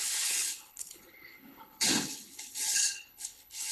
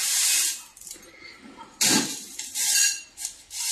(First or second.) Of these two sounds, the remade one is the first